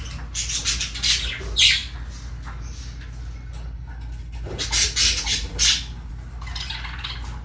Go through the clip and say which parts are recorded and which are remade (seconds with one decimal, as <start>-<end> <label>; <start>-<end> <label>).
0.0-7.4 recorded